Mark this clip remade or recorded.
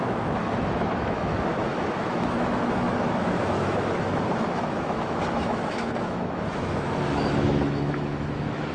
remade